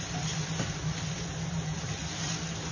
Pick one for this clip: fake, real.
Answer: real